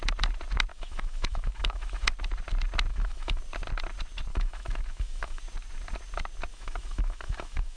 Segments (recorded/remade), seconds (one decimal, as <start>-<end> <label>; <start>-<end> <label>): 0.0-0.7 recorded; 0.7-2.1 remade; 2.1-2.9 recorded; 2.9-3.4 remade; 3.4-4.3 recorded; 4.3-5.4 remade; 5.4-6.5 recorded; 6.5-7.8 remade